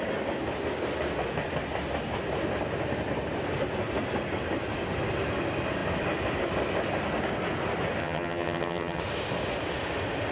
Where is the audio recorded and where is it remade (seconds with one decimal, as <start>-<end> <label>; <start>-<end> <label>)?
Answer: 0.0-8.0 recorded; 8.0-9.0 remade; 9.0-10.3 recorded

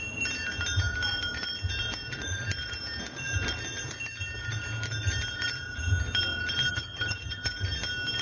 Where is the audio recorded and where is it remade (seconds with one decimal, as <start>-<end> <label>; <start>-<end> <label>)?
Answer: 0.0-6.7 recorded; 6.7-7.5 remade; 7.5-8.2 recorded

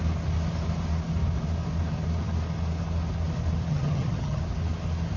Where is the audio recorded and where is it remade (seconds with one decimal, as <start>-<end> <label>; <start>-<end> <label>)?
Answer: 0.0-3.7 recorded; 3.7-4.4 remade; 4.4-5.2 recorded

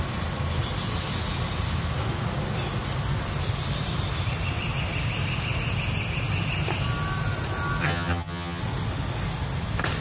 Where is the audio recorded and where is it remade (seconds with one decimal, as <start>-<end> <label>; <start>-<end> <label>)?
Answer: 0.0-7.8 recorded; 7.8-8.6 remade; 8.6-10.0 recorded

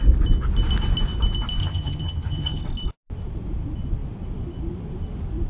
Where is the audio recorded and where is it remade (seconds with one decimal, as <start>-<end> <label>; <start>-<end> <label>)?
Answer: 0.0-1.6 recorded; 1.6-2.6 remade; 2.6-5.5 recorded

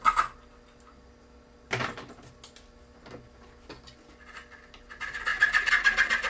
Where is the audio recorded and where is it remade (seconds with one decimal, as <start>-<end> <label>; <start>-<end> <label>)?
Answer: 0.0-6.3 recorded